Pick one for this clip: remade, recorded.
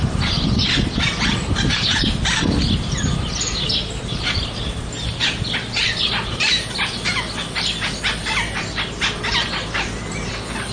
recorded